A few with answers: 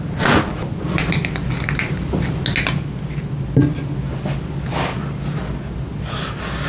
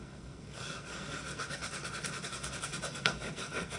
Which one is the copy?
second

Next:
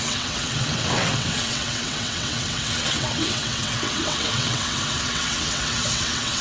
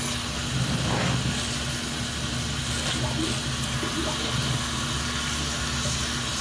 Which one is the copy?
first